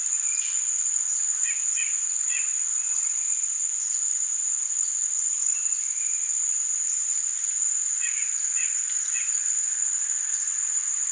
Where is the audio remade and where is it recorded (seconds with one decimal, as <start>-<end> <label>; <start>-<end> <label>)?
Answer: 0.0-3.5 recorded; 3.5-4.4 remade; 4.4-5.5 recorded; 5.5-6.2 remade; 6.2-7.1 recorded; 7.1-7.7 remade; 7.7-11.1 recorded